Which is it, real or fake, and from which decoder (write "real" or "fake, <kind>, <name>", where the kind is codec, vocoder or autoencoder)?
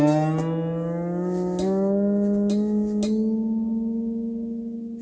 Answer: real